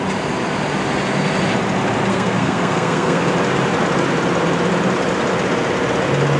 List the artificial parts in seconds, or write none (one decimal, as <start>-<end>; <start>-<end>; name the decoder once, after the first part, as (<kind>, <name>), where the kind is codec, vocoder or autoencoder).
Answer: 2.1-3.3 (codec, SNAC)